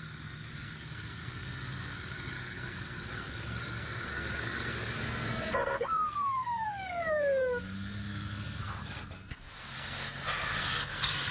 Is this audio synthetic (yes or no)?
yes